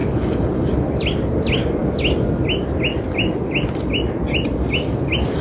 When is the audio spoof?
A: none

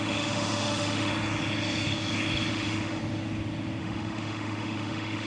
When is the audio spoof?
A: 0.0-1.1 (autoencoder, DAC-VAE); 2.5-3.0; 3.8-5.3